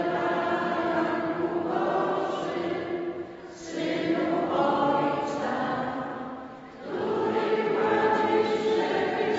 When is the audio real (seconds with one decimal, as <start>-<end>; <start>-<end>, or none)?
0.0-0.8; 1.7-6.1; 7.9-9.4